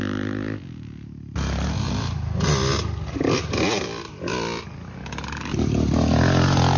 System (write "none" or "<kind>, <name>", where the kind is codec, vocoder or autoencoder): none